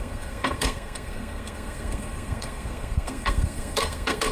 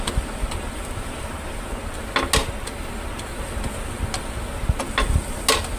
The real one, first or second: second